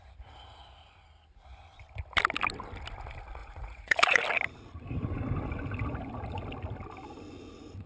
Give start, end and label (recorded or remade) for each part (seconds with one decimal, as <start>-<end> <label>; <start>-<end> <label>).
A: 0.0-3.4 recorded; 3.4-4.2 remade; 4.2-7.9 recorded